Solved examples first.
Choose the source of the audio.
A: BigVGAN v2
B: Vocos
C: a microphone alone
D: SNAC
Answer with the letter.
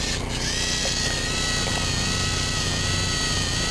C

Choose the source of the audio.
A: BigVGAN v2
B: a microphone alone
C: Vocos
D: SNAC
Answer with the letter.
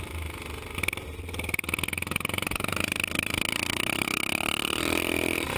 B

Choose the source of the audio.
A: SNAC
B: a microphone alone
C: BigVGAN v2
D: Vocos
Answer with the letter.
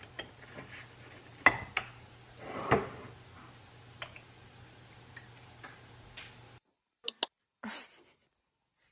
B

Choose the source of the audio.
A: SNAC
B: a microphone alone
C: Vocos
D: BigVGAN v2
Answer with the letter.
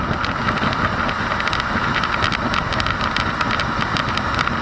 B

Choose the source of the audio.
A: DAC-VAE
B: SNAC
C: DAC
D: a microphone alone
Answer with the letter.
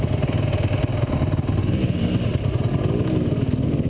D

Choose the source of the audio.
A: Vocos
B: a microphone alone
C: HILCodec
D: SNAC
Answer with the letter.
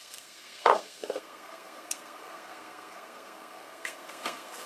D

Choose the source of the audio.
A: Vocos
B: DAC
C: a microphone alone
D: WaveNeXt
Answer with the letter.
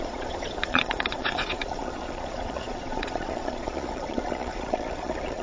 A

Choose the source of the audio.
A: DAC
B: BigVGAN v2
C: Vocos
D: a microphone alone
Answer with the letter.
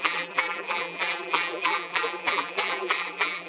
B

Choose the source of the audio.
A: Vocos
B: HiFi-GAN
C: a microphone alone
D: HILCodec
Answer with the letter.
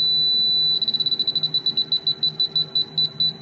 C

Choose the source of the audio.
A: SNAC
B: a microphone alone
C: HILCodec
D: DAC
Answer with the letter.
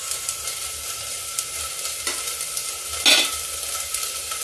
B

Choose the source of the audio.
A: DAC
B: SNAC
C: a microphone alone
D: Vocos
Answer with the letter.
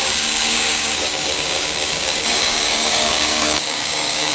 A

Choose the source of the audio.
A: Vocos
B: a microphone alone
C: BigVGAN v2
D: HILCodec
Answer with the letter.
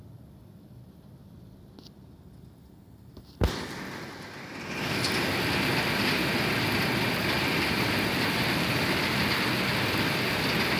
B